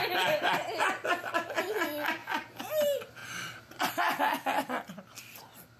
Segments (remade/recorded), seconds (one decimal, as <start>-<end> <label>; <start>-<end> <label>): 0.0-3.2 recorded; 3.2-3.9 remade; 3.9-5.8 recorded